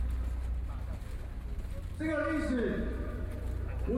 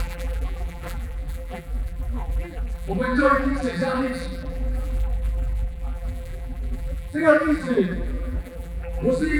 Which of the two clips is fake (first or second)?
second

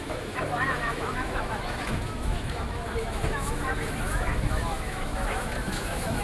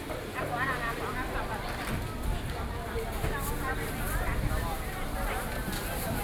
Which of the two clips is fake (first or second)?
first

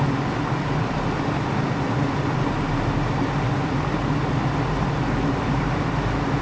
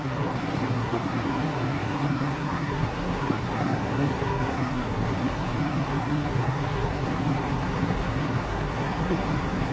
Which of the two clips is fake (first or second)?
second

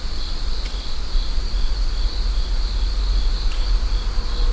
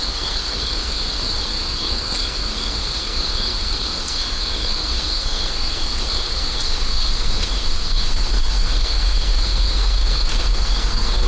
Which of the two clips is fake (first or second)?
second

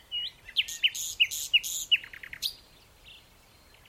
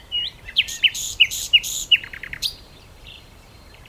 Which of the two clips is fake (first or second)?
second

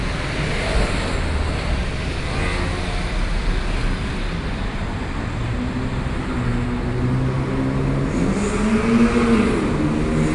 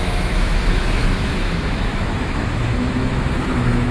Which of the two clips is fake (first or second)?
second